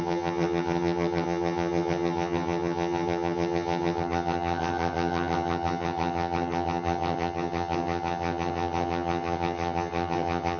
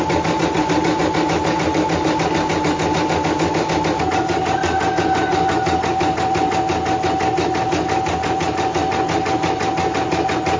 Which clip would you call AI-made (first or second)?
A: first